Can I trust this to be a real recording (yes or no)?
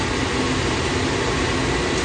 yes